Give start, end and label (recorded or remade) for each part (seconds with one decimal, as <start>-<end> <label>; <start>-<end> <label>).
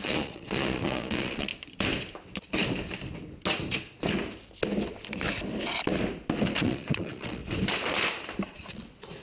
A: 0.0-1.5 remade; 1.5-6.6 recorded; 6.6-7.4 remade; 7.4-8.5 recorded; 8.5-9.2 remade